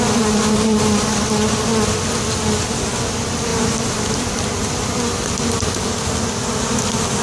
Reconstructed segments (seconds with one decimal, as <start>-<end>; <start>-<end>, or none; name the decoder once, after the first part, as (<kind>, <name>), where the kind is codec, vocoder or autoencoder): 3.5-4.1 (vocoder, BigVGAN v2)